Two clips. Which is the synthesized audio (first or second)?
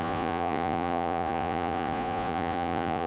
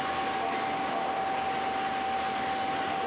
first